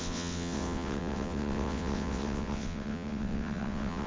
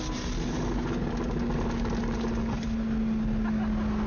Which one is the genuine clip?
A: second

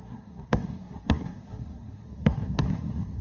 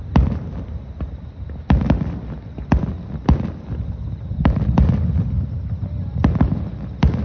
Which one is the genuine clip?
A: second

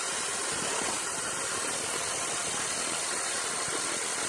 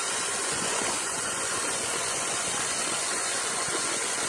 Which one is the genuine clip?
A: first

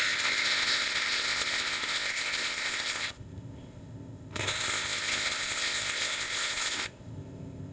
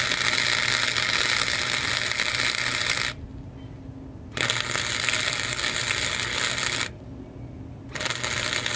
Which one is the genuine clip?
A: second